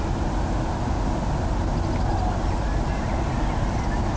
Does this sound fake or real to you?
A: real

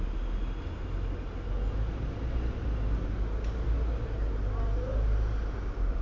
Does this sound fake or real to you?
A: real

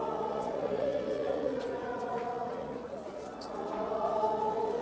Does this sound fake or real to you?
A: fake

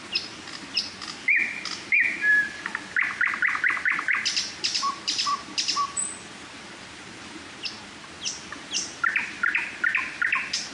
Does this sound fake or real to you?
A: real